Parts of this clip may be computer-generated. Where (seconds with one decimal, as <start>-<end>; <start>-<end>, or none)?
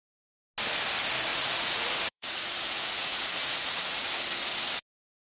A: 1.3-4.0